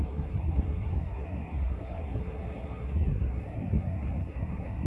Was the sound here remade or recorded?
remade